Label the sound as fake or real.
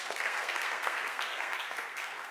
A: fake